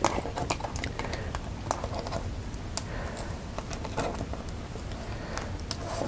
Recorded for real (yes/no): yes